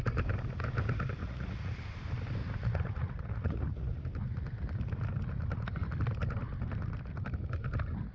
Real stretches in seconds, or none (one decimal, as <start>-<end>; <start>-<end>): 0.0-1.2; 1.7-2.4; 4.0-8.1